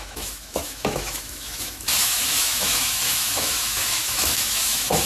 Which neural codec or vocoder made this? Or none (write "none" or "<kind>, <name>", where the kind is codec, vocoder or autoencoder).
autoencoder, DAC-VAE